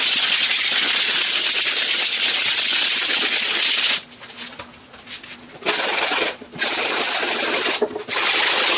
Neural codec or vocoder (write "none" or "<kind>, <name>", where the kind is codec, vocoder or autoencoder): none